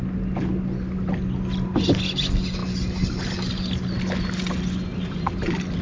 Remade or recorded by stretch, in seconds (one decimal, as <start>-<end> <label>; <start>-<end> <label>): 0.0-5.8 recorded